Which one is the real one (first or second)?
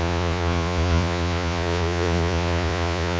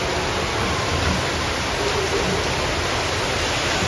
second